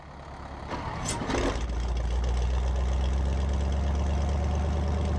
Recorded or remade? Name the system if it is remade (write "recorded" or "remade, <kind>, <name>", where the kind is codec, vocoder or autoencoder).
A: recorded